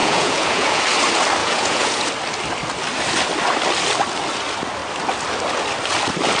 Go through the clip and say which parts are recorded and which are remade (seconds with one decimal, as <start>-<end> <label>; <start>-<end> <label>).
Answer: 0.0-0.8 remade; 0.8-1.4 recorded; 1.4-2.1 remade; 2.1-6.4 recorded

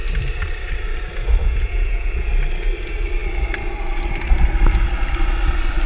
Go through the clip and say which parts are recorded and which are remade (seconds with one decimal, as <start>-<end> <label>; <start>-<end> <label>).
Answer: 0.0-1.4 recorded; 1.4-2.3 remade; 2.3-5.9 recorded

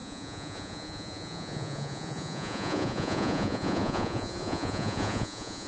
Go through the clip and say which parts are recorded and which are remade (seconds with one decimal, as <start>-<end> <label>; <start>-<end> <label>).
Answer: 0.0-5.7 remade

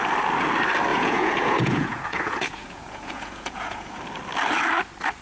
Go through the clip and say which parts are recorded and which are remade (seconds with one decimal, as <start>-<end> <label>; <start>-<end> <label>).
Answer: 0.0-0.9 recorded; 0.9-4.0 remade; 4.0-5.2 recorded

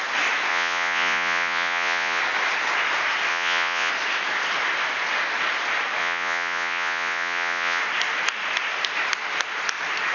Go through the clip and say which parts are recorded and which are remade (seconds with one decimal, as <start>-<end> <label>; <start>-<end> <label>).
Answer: 0.0-0.5 recorded; 0.5-2.2 remade; 2.2-3.3 recorded; 3.3-3.9 remade; 3.9-6.0 recorded; 6.0-7.8 remade; 7.8-10.1 recorded